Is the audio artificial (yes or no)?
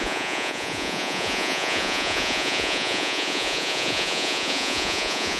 yes